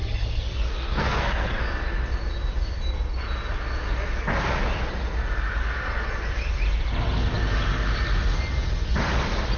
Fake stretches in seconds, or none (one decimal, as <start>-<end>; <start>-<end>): 0.0-1.6